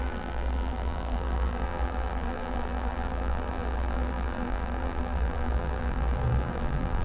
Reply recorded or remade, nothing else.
remade